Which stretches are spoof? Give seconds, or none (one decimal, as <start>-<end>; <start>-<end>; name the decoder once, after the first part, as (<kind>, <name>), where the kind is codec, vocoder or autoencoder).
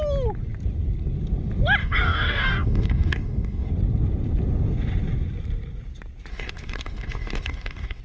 1.8-3.7 (codec, DAC); 6.3-8.0